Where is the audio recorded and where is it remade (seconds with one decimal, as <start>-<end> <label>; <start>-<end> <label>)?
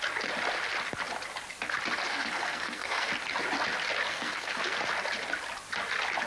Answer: 0.0-2.1 recorded; 2.1-3.1 remade; 3.1-4.1 recorded; 4.1-4.8 remade; 4.8-6.3 recorded